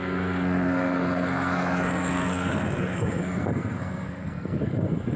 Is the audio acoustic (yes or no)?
no